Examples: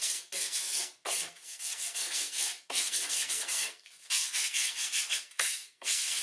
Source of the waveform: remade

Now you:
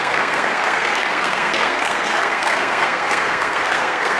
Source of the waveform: remade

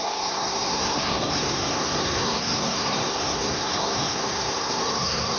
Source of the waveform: remade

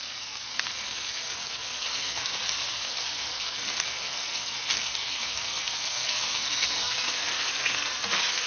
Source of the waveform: remade